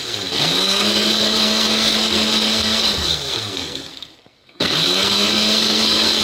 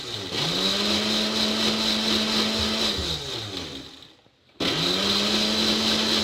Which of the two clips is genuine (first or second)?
second